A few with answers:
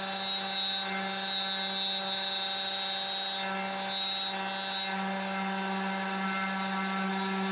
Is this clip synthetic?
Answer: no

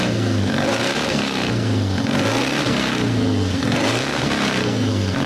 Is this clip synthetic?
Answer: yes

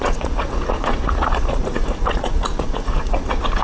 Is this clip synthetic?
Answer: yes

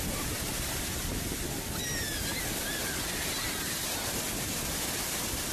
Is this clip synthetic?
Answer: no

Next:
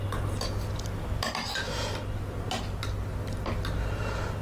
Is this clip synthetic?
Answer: no